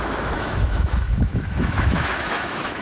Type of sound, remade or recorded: remade